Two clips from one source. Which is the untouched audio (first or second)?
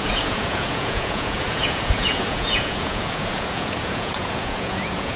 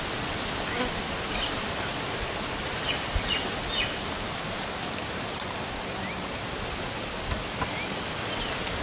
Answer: second